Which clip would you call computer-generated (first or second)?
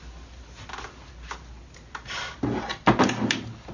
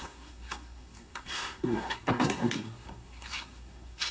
second